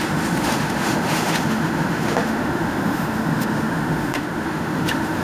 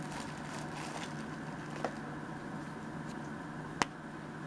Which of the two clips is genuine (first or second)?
second